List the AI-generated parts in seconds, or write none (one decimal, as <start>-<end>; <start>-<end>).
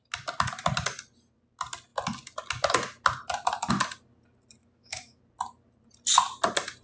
4.6-5.2